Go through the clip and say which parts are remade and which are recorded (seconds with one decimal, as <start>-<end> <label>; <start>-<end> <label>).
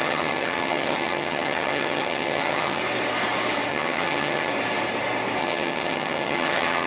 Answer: 0.0-2.8 remade; 2.8-3.7 recorded; 3.7-4.5 remade; 4.5-5.4 recorded; 5.4-6.9 remade